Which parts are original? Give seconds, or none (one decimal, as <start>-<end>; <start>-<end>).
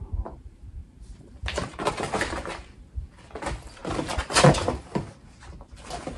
0.0-0.8; 3.0-6.2